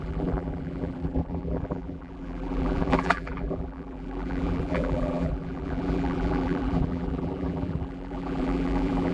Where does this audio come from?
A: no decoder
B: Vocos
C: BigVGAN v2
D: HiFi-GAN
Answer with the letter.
C